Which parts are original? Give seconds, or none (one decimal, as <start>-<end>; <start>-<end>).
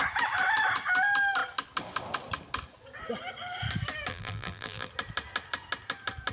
0.0-4.1; 4.9-6.3